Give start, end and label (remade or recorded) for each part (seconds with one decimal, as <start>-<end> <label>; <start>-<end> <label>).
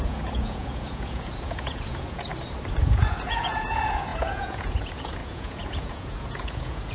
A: 0.0-2.3 remade; 2.3-2.8 recorded; 2.8-6.9 remade